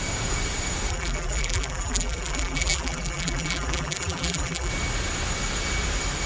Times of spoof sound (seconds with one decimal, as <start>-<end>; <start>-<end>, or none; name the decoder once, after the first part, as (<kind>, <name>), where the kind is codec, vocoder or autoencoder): 0.9-4.7 (vocoder, BigVGAN v2)